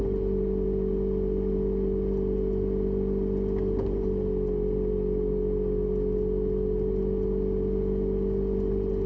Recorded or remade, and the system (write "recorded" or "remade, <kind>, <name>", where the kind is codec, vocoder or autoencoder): recorded